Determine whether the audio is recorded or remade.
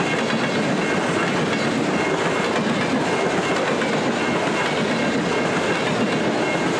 recorded